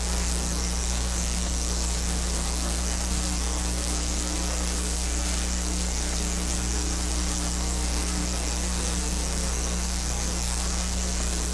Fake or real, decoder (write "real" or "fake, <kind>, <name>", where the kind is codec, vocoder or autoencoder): fake, codec, SNAC